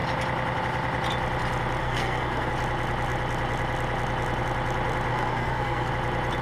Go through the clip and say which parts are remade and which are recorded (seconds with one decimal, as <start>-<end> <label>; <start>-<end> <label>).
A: 0.0-1.8 recorded; 1.8-2.5 remade; 2.5-5.1 recorded; 5.1-5.9 remade; 5.9-6.4 recorded